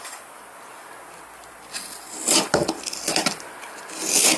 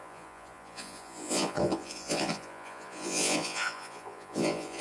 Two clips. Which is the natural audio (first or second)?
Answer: first